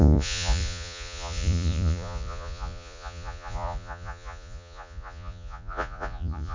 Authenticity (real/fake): fake